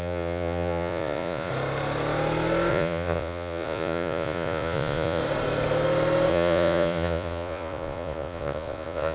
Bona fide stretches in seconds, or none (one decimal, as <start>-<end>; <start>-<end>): 1.5-2.7; 5.2-6.3